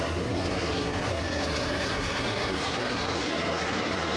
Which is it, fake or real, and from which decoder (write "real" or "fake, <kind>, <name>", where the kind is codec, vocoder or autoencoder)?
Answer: fake, codec, SNAC